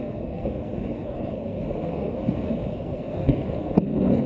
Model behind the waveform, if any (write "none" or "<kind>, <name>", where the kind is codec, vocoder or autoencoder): codec, SNAC